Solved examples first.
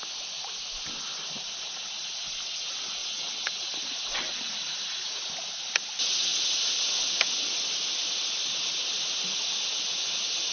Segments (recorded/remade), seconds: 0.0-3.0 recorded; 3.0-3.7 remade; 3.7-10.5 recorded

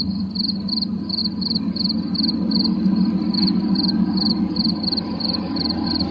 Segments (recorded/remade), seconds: 0.0-6.1 recorded

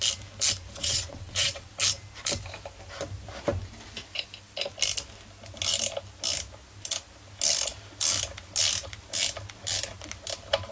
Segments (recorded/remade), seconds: 0.0-0.8 recorded; 0.8-1.7 remade; 1.7-10.7 recorded

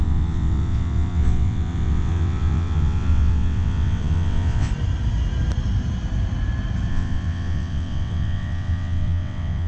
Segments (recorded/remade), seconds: 0.0-4.7 remade; 4.7-6.9 recorded; 6.9-9.7 remade

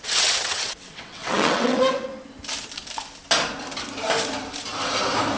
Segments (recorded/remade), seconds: 0.0-2.1 remade; 2.1-5.4 recorded

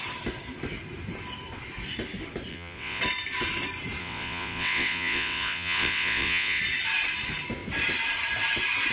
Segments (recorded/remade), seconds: 0.0-2.5 recorded; 2.5-3.0 remade; 3.0-4.0 recorded; 4.0-6.6 remade; 6.6-8.9 recorded

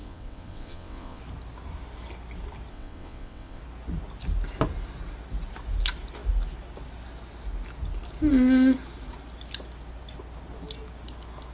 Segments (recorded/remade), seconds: 0.0-1.2 remade; 1.2-2.7 recorded; 2.7-3.6 remade; 3.6-11.5 recorded

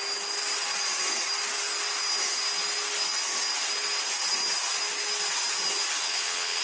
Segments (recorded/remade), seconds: 0.0-6.0 recorded; 6.0-6.6 remade